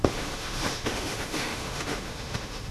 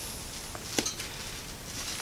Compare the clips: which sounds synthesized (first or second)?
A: first